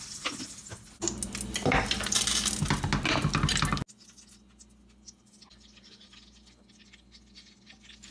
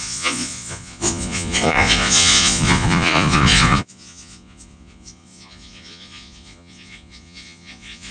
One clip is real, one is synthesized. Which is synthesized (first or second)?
second